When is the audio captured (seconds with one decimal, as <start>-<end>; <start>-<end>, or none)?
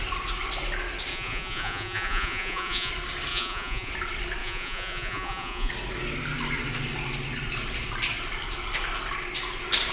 0.0-1.1; 2.9-3.3; 3.9-4.4; 5.7-9.9